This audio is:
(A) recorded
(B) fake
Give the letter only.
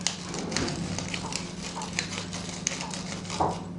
A